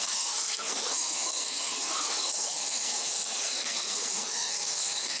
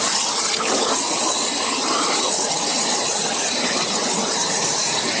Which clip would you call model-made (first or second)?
first